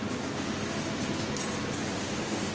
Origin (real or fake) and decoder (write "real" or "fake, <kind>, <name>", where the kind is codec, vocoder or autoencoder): real